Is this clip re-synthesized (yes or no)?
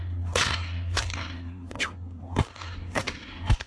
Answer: yes